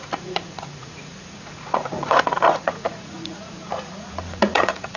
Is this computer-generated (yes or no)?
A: yes